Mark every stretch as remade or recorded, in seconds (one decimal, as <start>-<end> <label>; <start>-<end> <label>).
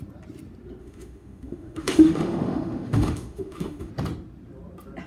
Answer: 0.0-0.8 recorded; 0.8-3.9 remade; 3.9-5.1 recorded